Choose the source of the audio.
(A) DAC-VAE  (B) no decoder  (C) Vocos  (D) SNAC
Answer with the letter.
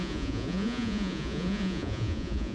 C